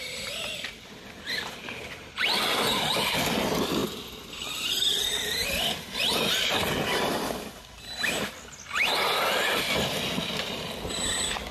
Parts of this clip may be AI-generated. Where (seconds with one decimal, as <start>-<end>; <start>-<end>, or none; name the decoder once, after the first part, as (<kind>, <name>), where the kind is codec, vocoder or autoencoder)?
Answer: none

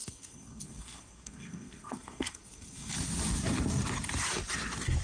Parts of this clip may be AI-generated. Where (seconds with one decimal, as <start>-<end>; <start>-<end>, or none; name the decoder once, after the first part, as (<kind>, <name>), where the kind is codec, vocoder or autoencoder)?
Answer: 0.0-2.9 (codec, SNAC)